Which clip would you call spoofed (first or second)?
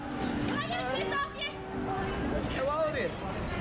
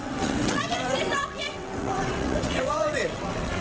second